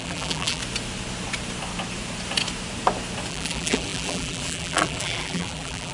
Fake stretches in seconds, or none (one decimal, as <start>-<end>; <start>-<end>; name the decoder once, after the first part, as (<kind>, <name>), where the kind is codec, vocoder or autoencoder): 0.0-0.6 (vocoder, BigVGAN v2); 3.3-5.9